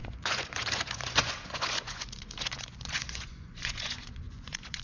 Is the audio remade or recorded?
remade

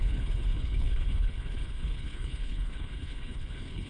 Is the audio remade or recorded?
remade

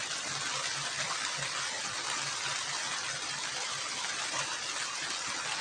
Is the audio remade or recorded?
recorded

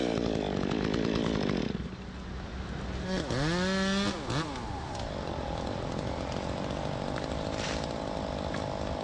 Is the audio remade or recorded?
recorded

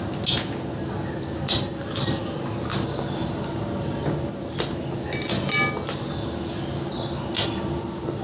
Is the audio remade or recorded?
recorded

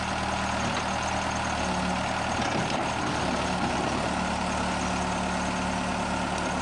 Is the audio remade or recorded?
recorded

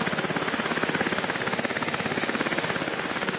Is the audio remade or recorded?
recorded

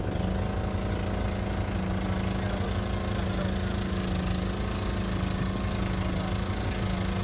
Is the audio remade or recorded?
recorded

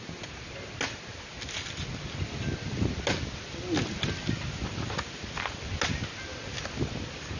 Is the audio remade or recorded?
recorded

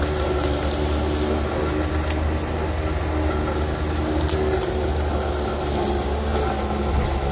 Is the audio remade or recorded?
recorded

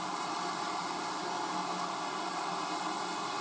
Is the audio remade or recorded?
recorded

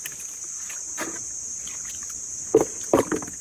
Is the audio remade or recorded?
recorded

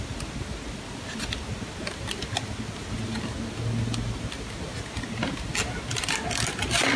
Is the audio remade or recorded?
recorded